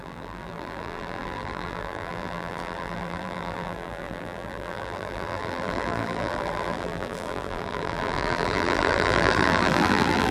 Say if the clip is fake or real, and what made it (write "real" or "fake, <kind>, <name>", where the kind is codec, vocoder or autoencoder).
fake, vocoder, BigVGAN v2